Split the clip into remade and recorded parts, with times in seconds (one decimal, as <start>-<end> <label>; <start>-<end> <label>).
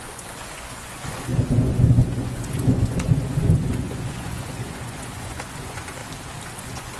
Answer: 0.0-6.0 remade; 6.0-6.5 recorded; 6.5-7.0 remade